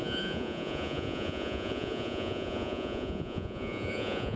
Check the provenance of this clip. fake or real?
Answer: fake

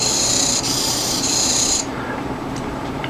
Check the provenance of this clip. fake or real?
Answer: fake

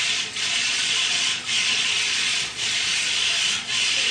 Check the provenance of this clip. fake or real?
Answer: fake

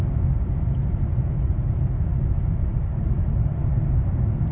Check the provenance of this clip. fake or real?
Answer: real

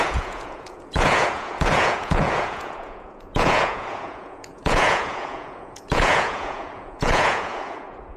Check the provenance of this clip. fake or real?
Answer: fake